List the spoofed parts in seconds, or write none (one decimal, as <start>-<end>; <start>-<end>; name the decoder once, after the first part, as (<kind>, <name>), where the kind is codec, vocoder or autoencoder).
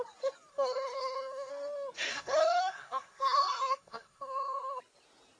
0.5-1.5 (codec, SNAC); 2.1-4.8